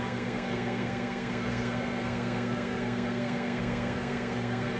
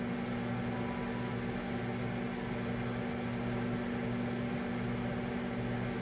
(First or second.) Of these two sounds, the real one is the second